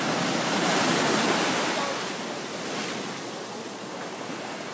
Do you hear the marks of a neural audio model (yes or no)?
no